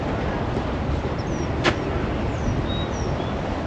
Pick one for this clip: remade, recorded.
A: recorded